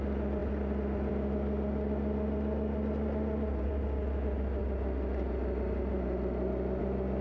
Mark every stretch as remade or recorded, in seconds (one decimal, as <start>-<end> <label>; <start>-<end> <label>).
0.0-7.2 recorded